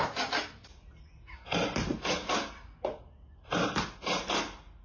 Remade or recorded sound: recorded